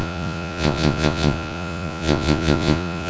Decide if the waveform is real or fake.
fake